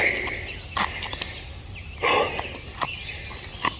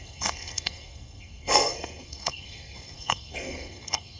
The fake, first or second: second